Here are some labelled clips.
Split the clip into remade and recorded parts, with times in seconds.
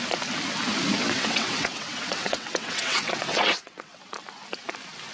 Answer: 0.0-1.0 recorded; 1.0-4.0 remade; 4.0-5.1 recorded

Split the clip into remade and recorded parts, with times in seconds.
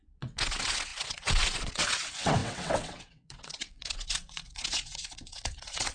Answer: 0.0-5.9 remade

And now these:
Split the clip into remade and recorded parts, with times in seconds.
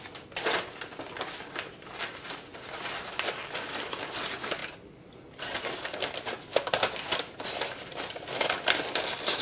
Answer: 0.0-9.4 recorded